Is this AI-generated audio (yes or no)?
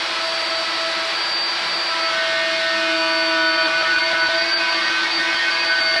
no